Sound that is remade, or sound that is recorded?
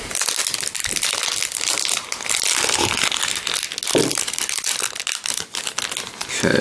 recorded